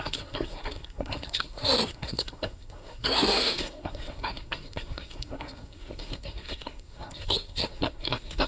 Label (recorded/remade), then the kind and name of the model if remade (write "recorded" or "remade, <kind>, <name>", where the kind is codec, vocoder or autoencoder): remade, codec, SNAC